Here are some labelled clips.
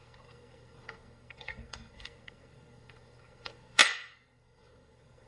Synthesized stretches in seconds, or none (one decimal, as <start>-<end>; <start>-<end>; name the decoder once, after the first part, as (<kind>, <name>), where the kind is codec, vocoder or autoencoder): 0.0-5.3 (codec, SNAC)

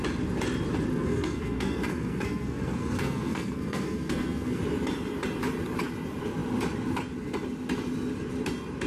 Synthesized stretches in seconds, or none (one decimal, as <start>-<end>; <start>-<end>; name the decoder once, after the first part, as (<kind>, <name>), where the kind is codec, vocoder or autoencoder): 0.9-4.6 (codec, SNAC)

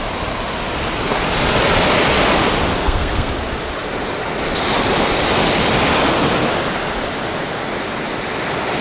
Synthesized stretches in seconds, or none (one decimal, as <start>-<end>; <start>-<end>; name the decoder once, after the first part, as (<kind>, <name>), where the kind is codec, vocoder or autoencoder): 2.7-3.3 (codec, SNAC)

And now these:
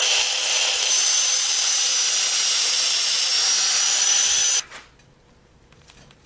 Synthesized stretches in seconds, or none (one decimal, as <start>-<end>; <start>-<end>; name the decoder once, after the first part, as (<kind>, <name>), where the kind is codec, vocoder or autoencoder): 0.0-1.9 (vocoder, BigVGAN v2); 2.5-3.3; 3.8-4.4; 5.3-6.3